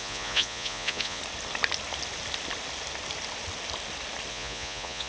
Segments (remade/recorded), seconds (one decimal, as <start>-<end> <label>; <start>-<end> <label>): 0.0-1.2 remade; 1.2-4.3 recorded; 4.3-5.1 remade